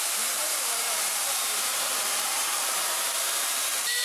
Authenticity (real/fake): fake